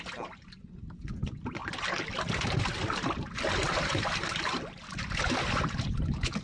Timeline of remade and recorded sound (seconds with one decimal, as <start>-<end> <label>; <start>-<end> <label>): 0.0-6.4 recorded